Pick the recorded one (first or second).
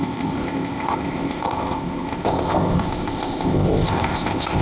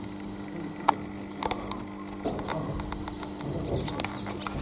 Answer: second